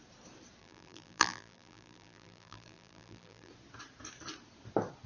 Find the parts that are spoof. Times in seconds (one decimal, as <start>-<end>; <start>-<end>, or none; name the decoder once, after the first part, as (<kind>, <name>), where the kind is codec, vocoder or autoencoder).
0.6-3.5 (vocoder, BigVGAN v2)